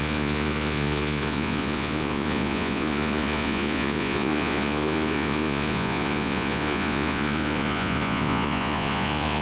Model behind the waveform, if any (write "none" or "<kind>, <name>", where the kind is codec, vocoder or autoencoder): vocoder, Vocos